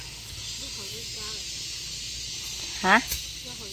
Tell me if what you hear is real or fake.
real